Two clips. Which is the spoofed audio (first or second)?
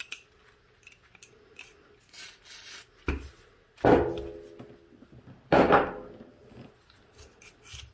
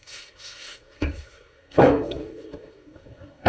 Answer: second